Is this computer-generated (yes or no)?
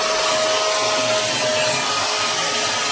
no